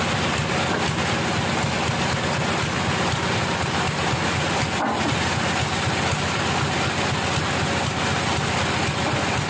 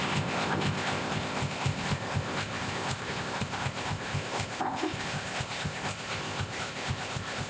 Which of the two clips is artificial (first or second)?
second